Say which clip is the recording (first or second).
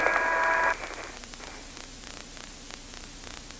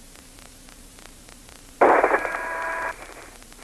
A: first